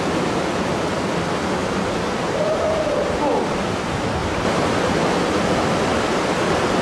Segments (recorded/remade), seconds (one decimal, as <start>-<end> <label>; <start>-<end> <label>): 0.0-1.6 recorded; 1.6-2.9 remade; 2.9-4.2 recorded; 4.2-4.8 remade; 4.8-6.8 recorded